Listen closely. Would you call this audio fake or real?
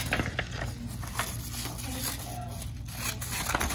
real